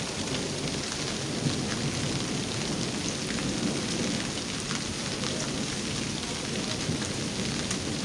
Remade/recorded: recorded